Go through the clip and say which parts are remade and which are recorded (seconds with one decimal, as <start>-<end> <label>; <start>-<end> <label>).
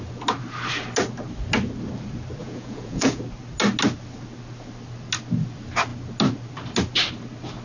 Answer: 0.0-2.4 recorded; 2.4-3.2 remade; 3.2-7.6 recorded